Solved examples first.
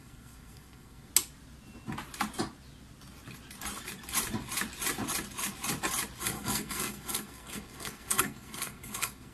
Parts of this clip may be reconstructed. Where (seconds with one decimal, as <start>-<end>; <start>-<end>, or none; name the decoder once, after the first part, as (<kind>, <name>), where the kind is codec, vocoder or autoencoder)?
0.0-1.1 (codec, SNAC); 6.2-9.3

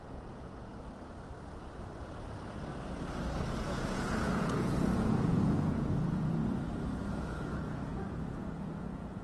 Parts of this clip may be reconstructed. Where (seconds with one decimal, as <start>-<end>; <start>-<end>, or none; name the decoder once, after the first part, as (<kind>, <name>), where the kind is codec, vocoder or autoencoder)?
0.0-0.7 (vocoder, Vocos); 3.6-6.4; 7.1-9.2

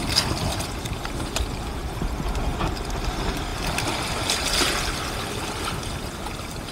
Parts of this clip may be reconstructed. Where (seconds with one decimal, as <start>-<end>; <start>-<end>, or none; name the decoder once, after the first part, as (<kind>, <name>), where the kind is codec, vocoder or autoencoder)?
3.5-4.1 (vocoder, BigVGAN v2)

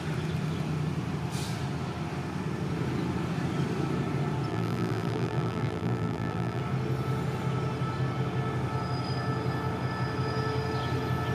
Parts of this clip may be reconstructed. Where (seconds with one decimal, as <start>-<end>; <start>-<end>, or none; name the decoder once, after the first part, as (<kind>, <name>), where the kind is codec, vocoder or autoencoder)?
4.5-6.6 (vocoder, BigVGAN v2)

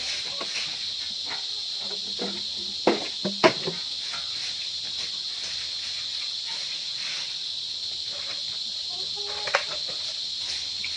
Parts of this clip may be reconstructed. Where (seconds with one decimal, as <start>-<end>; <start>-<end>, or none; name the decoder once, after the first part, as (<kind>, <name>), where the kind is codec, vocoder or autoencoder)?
none

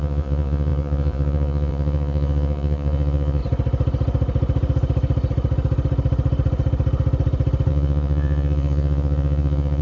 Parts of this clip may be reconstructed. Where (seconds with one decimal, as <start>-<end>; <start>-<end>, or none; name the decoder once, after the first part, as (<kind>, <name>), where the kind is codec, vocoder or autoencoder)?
0.0-3.4 (vocoder, Vocos); 7.7-9.8

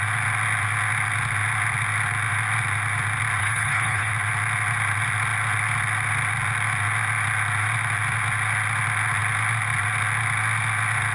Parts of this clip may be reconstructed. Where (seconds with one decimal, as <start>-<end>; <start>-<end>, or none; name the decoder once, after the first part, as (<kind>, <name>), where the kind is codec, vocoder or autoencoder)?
3.4-4.1 (codec, HILCodec)

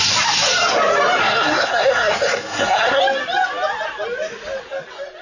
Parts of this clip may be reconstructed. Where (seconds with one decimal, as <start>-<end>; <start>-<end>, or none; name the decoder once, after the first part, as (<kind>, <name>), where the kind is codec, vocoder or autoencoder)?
1.2-3.0 (codec, SNAC)